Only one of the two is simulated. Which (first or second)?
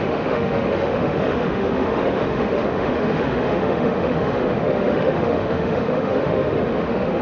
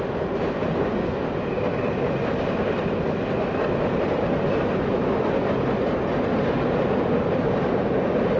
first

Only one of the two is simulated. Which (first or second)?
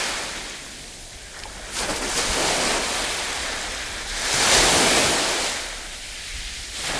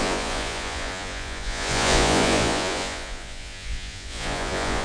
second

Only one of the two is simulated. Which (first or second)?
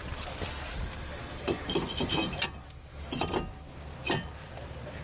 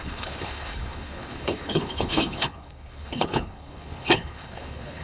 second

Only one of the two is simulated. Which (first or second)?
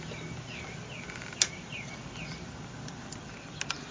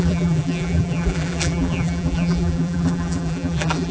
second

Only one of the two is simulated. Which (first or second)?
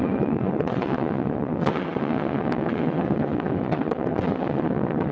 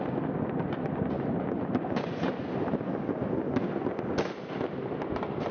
first